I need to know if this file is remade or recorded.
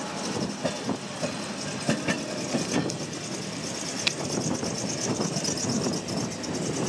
recorded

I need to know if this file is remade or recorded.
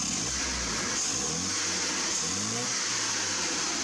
recorded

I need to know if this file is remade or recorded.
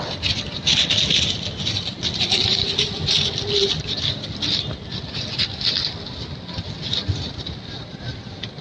recorded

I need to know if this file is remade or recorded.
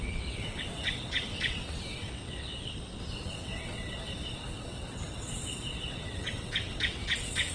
remade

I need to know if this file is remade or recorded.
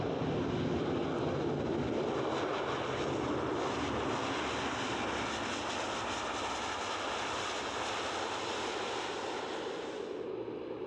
recorded